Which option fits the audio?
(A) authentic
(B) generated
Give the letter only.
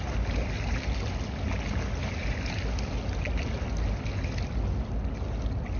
A